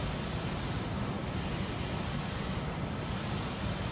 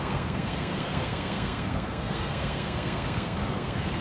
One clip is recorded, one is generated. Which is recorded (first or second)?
first